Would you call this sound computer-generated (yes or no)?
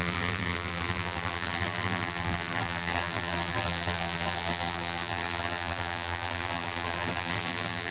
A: yes